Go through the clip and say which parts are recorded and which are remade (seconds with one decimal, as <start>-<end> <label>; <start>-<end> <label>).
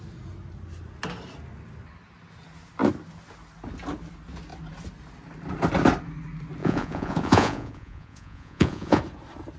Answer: 0.0-6.6 recorded; 6.6-9.0 remade; 9.0-9.6 recorded